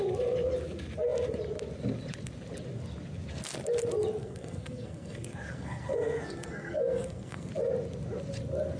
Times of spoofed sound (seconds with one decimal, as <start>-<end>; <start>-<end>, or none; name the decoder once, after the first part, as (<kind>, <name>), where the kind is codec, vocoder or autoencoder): 4.2-7.5 (codec, SNAC)